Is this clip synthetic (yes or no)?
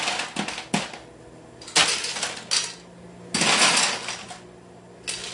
no